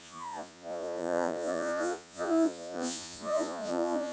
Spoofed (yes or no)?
yes